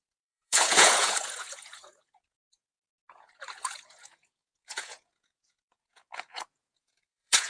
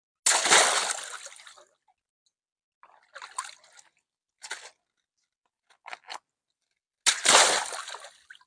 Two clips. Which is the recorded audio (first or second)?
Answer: second